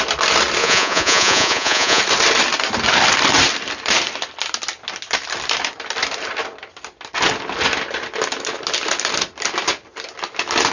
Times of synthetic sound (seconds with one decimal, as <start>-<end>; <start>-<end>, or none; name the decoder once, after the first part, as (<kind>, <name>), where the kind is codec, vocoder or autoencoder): 0.6-2.0 (vocoder, Vocos)